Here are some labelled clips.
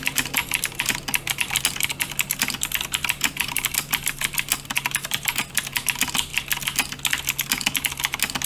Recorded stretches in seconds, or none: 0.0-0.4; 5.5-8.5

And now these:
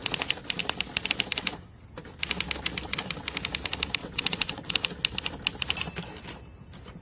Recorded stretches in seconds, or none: 0.0-4.0; 4.7-7.0

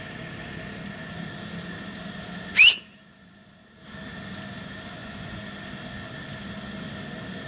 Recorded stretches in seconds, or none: 0.0-5.0; 5.5-7.5

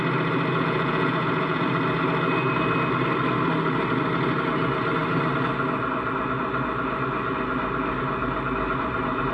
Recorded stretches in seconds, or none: 0.0-0.5; 1.7-9.3